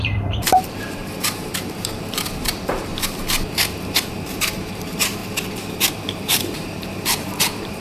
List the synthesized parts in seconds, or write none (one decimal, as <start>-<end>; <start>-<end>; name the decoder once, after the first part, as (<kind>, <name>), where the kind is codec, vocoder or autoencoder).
0.0-2.9 (vocoder, BigVGAN v2); 4.1-5.2; 5.9-7.8